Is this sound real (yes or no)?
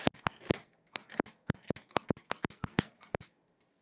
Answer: no